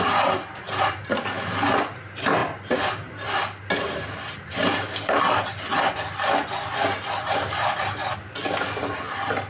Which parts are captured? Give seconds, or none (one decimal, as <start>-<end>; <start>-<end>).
0.0-9.5